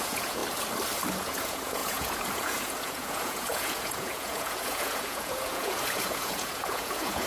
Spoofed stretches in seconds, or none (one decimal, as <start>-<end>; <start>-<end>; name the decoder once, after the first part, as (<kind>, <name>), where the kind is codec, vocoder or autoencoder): 0.0-0.4 (vocoder, Vocos); 1.1-7.3